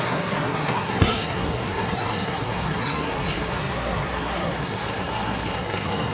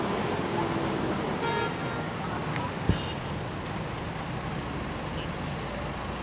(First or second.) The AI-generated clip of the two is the first